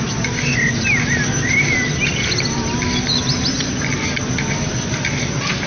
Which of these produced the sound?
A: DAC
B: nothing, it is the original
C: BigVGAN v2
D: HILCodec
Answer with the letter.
B